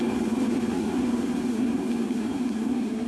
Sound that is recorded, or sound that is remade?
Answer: remade